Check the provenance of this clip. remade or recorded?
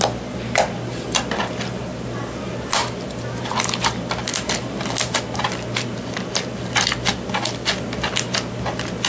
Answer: recorded